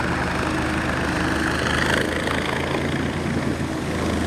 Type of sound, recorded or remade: recorded